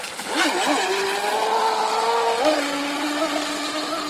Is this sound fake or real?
real